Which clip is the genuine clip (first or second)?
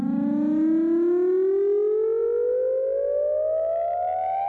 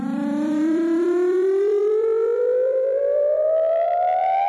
first